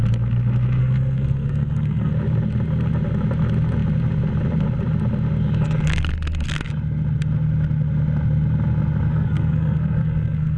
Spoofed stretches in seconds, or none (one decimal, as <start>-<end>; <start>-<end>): 0.8-2.1; 9.1-10.6